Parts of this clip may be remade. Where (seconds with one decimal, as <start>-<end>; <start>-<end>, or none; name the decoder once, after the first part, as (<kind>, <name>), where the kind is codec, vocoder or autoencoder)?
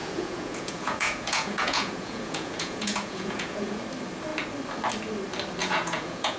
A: 0.0-3.8 (vocoder, Vocos); 5.6-6.4